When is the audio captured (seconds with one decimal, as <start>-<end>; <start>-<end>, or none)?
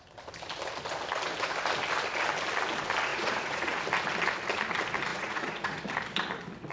0.0-3.1; 3.8-5.1; 5.8-6.7